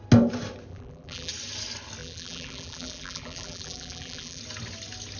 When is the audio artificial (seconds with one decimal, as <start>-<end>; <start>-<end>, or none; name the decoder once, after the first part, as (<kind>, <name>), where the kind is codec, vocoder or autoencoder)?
0.7-1.3 (vocoder, BigVGAN v2); 2.0-4.4